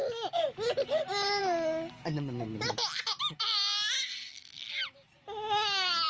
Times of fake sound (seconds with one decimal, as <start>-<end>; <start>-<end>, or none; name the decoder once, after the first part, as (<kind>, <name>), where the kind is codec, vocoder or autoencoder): 4.1-4.7 (codec, SNAC)